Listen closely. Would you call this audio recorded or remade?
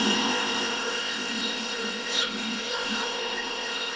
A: remade